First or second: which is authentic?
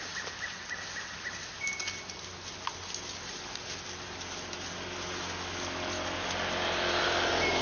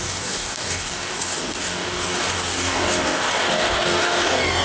first